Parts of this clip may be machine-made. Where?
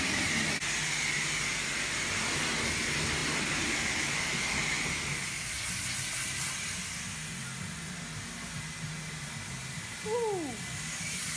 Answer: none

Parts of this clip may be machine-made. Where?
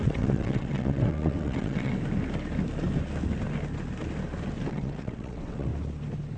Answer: 0.0-1.9 (vocoder, WaveNeXt); 4.7-5.7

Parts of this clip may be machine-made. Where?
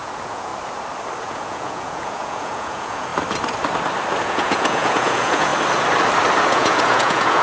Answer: 0.0-0.5 (vocoder, Vocos); 1.2-3.1; 4.2-5.5; 6.5-7.4